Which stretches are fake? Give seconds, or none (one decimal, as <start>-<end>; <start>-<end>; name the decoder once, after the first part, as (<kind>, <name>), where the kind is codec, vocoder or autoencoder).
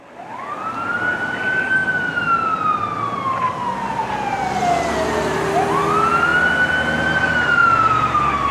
7.6-8.5 (vocoder, BigVGAN v2)